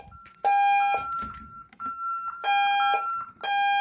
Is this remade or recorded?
recorded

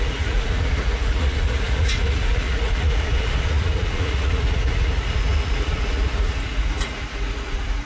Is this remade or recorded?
remade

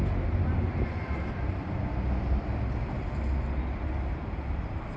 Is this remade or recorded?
recorded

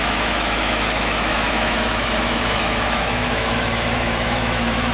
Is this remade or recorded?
remade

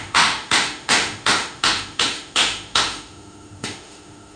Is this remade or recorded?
remade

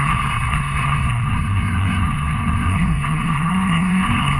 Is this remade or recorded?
remade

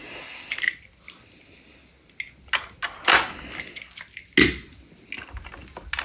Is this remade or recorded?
recorded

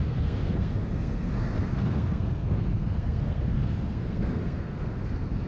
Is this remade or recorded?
remade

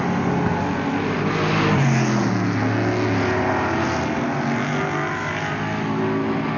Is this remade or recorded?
recorded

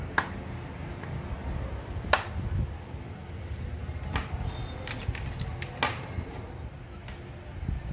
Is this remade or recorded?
recorded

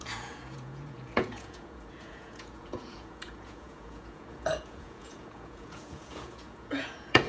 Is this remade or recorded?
remade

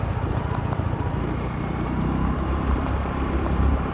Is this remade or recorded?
remade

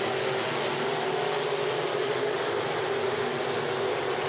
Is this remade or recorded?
recorded